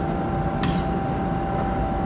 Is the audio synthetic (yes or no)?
no